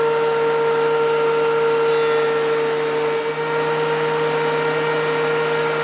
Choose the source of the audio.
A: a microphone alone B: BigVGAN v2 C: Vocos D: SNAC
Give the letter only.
A